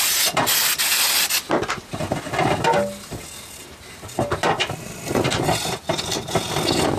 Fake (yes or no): no